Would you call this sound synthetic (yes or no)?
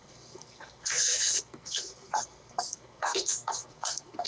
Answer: yes